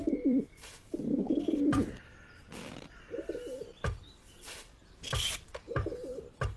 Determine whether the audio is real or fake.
fake